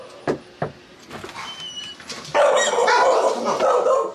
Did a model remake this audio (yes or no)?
no